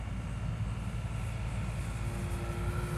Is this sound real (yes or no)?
yes